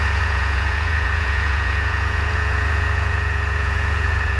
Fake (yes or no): yes